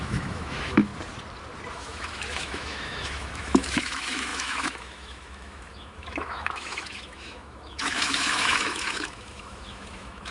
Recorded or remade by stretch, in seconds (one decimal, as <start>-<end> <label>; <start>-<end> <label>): 0.0-0.9 remade; 0.9-1.7 recorded; 1.7-10.3 remade